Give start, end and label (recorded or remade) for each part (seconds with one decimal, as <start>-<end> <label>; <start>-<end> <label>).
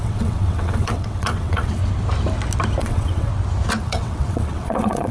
0.0-1.8 remade; 1.8-2.8 recorded; 2.8-3.3 remade; 3.3-3.8 recorded; 3.8-5.1 remade